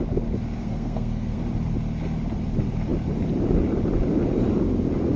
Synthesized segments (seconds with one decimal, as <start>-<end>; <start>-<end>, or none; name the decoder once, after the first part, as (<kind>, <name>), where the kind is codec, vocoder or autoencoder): 0.6-1.4 (codec, SNAC)